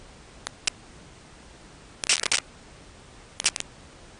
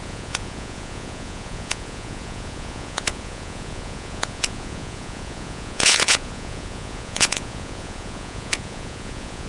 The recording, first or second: first